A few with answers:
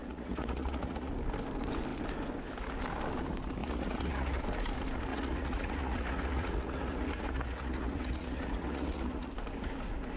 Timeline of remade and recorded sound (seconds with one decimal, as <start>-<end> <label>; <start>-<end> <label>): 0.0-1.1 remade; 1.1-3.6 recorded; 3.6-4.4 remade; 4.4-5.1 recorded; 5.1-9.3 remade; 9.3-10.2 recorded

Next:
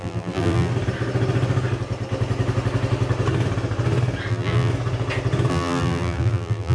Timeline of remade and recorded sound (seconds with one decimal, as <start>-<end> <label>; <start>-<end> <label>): 0.0-0.7 remade; 0.7-4.3 recorded; 4.3-4.7 remade; 4.7-5.5 recorded; 5.5-6.7 remade

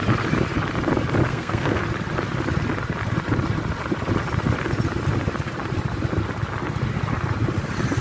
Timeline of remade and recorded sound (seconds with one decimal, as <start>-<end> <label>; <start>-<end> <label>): 0.0-1.3 recorded; 1.3-1.8 remade; 1.8-8.0 recorded

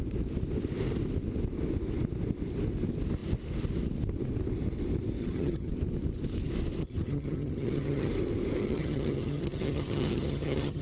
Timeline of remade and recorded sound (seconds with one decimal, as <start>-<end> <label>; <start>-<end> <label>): 0.0-5.2 recorded; 5.2-5.7 remade; 5.7-6.8 recorded; 6.8-8.1 remade; 8.1-8.6 recorded; 8.6-10.8 remade

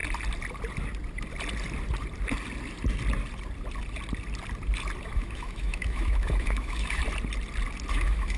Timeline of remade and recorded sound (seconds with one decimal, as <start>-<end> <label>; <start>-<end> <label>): 0.0-5.0 recorded; 5.0-7.0 remade; 7.0-7.9 recorded; 7.9-8.4 remade

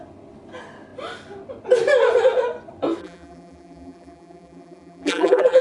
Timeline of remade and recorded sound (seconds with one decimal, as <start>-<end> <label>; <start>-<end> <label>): 0.0-3.0 recorded; 3.0-5.6 remade

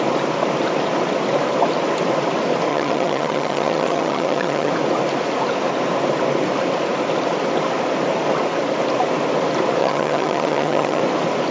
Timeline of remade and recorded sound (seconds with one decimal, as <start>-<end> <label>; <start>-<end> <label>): 0.0-2.7 recorded; 2.7-4.7 remade; 4.7-9.8 recorded; 9.8-11.0 remade; 11.0-11.5 recorded

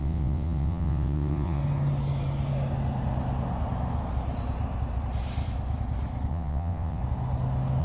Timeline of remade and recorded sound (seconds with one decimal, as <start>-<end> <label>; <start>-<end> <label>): 0.0-1.6 remade; 1.6-6.3 recorded; 6.3-7.0 remade; 7.0-7.8 recorded